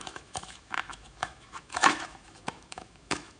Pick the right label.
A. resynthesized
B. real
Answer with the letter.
A